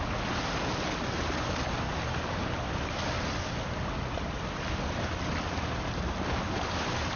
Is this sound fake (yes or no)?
no